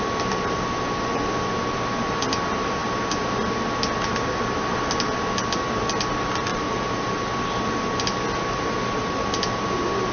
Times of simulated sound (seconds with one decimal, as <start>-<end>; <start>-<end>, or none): 6.5-7.1